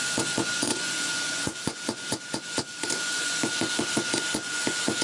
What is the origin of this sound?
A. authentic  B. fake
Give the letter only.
B